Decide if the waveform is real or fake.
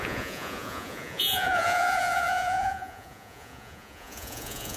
fake